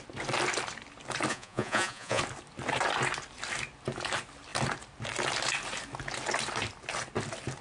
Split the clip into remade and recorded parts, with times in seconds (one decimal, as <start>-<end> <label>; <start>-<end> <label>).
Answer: 0.0-1.3 recorded; 1.3-2.2 remade; 2.2-7.6 recorded